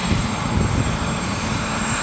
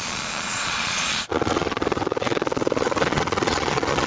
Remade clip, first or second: second